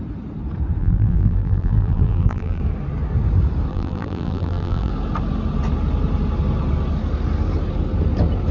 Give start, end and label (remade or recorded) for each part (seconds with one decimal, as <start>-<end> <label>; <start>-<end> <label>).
0.0-0.8 recorded; 0.8-2.6 remade; 2.6-3.7 recorded; 3.7-4.9 remade; 4.9-8.5 recorded